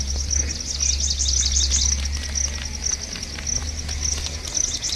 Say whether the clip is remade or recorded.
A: recorded